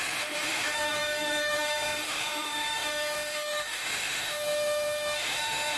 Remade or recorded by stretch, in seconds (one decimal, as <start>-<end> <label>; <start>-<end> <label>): 0.0-5.8 remade